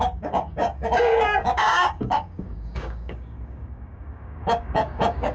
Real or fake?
fake